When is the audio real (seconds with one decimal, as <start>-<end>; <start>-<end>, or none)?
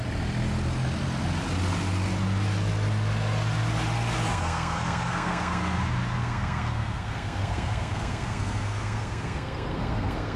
0.0-4.3; 5.8-6.2